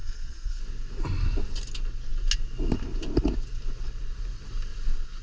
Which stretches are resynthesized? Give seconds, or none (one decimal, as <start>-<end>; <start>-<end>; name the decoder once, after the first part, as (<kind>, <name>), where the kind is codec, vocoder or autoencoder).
0.0-0.6 (codec, SNAC)